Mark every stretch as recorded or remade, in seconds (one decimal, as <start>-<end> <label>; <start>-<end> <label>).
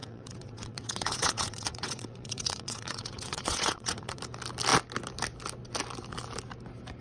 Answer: 0.0-4.2 remade; 4.2-7.0 recorded